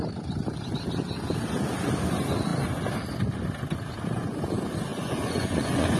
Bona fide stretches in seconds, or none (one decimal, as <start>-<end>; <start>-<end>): 0.0-4.9